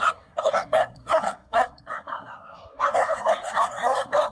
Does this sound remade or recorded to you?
remade